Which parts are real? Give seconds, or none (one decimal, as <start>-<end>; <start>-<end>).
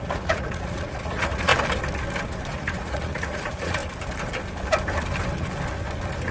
1.5-2.5; 3.8-6.3